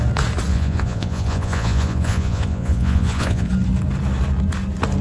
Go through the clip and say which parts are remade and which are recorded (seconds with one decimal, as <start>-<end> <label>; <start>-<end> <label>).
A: 0.0-0.5 recorded; 0.5-3.5 remade; 3.5-5.0 recorded